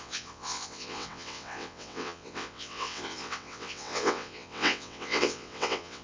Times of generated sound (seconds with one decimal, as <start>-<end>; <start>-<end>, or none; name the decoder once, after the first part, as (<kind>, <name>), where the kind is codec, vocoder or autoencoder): 0.0-6.0 (vocoder, WaveNeXt)